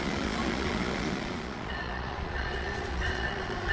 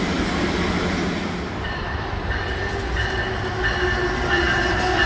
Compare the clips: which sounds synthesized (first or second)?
first